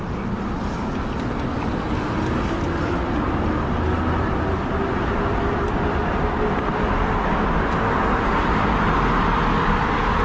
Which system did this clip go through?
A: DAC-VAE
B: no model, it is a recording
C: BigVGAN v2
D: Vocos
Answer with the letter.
B